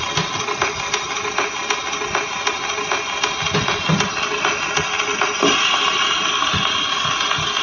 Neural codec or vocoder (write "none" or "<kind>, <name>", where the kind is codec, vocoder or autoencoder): none